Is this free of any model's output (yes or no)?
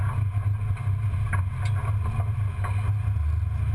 yes